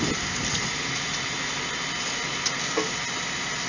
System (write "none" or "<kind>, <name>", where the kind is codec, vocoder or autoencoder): none